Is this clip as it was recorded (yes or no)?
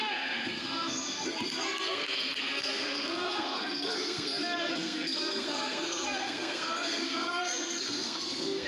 no